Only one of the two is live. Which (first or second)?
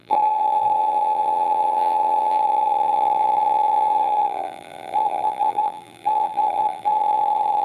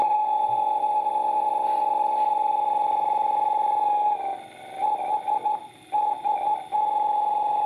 second